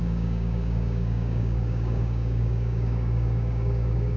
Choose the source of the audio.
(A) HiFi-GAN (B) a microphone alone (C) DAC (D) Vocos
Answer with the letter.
C